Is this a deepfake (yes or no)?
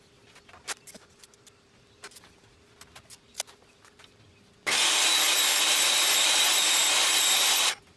no